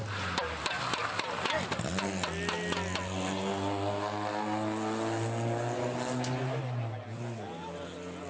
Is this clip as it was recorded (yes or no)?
yes